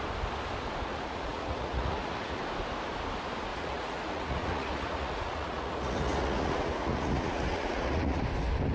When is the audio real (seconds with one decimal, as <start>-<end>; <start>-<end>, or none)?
0.0-0.9; 2.4-3.5; 8.2-8.7